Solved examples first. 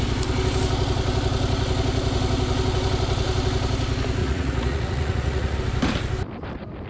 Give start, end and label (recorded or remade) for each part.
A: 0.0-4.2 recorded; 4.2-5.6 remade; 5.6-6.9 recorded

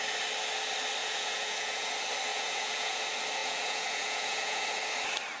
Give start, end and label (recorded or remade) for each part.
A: 0.0-1.0 recorded; 1.0-1.9 remade; 1.9-2.3 recorded; 2.3-3.0 remade; 3.0-3.4 recorded; 3.4-4.8 remade; 4.8-5.4 recorded

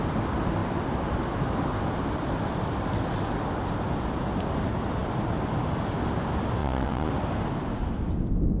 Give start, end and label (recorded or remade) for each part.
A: 0.0-6.6 recorded; 6.6-7.1 remade; 7.1-8.6 recorded

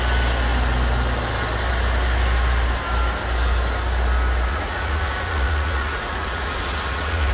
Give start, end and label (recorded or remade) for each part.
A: 0.0-4.5 recorded; 4.5-7.3 remade

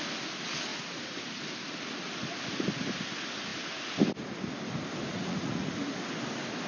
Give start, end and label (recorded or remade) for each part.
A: 0.0-0.7 recorded; 0.7-1.4 remade; 1.4-5.0 recorded; 5.0-5.7 remade; 5.7-6.7 recorded

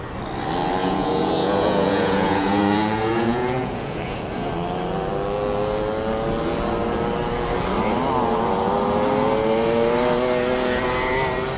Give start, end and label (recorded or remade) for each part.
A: 0.0-0.8 recorded; 0.8-4.5 remade; 4.5-11.6 recorded

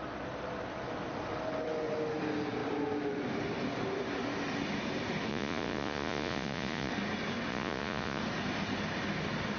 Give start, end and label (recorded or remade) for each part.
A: 0.0-5.3 recorded; 5.3-6.9 remade; 6.9-7.5 recorded; 7.5-8.2 remade; 8.2-9.6 recorded